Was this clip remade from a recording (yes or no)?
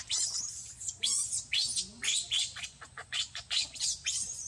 yes